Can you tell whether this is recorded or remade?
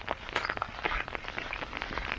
recorded